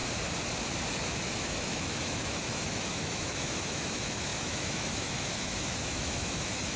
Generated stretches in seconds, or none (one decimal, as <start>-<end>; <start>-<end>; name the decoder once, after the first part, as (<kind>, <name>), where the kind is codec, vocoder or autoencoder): 0.9-6.8 (autoencoder, DAC-VAE)